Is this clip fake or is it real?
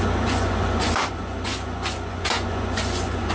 fake